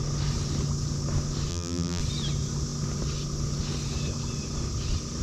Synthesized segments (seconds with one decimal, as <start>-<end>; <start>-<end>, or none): 1.5-2.0